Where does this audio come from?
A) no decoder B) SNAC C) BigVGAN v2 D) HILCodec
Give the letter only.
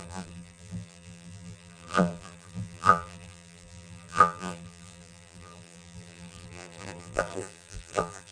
C